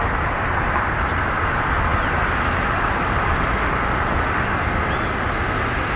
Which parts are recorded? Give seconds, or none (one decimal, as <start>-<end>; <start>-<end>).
0.0-6.0